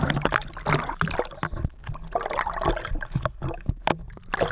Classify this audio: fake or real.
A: real